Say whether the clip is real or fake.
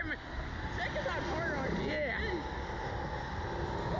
real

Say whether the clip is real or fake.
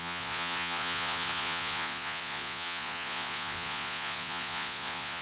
fake